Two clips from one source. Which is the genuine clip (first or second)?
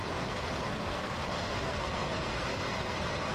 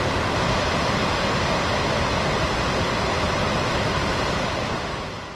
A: second